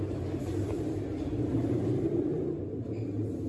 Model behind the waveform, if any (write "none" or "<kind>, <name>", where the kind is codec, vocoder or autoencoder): vocoder, BigVGAN v2